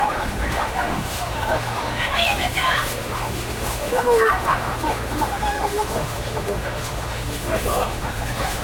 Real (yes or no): no